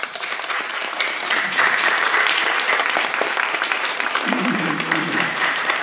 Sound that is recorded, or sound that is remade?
remade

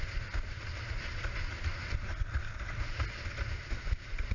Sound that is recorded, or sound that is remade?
recorded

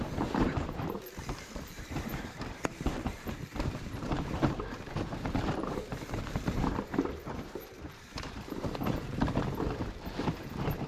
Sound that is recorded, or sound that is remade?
remade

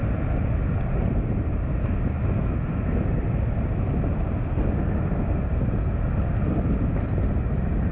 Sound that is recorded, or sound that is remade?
recorded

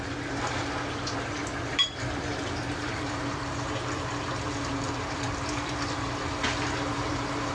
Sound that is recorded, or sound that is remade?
remade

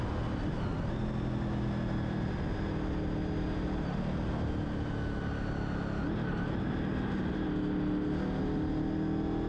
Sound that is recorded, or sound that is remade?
recorded